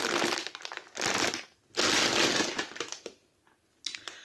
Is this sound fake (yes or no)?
no